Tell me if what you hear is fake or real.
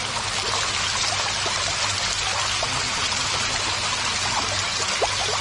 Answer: real